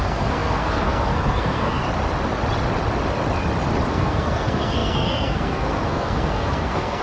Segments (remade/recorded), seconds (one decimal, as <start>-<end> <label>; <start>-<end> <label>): 0.0-1.8 remade; 1.8-3.9 recorded; 3.9-7.0 remade